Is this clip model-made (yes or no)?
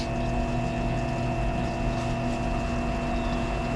no